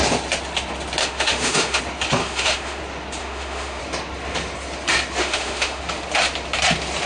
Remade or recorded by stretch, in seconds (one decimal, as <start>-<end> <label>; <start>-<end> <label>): 0.0-1.0 recorded; 1.0-1.8 remade; 1.8-2.2 recorded; 2.2-2.8 remade; 2.8-3.2 recorded; 3.2-3.8 remade; 3.8-5.2 recorded; 5.2-5.8 remade; 5.8-7.1 recorded